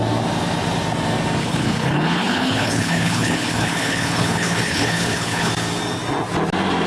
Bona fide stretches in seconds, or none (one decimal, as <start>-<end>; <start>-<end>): 0.0-1.4; 5.5-6.9